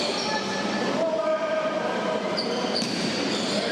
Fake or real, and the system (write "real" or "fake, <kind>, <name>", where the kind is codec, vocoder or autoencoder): fake, vocoder, BigVGAN v2